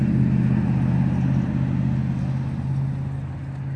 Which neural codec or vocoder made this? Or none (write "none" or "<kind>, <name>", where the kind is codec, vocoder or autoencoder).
none